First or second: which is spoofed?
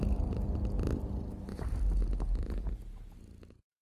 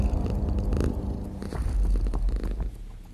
first